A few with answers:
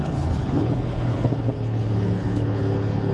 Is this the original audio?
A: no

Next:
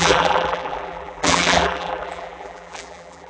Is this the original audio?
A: no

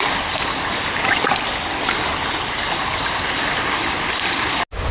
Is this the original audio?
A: yes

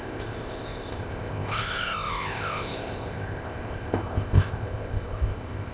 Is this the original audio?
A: no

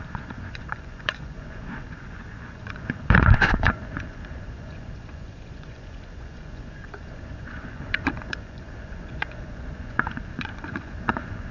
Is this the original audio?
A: no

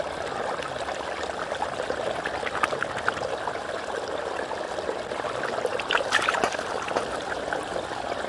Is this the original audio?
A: yes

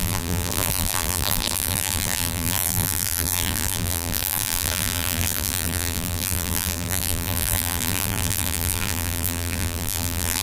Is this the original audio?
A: no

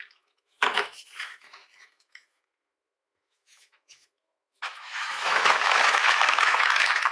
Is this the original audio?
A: no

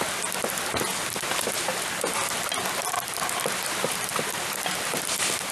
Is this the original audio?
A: yes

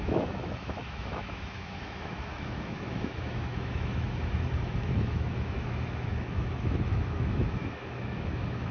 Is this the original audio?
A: no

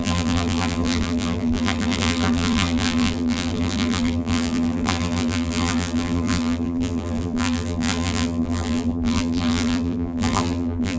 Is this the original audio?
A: no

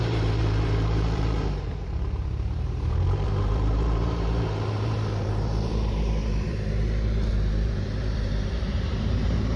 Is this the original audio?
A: no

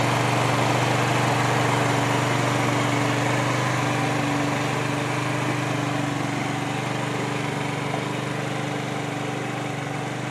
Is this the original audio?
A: yes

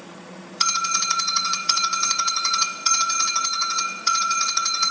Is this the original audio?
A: no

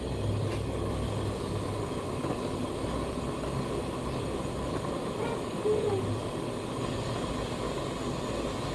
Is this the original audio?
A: yes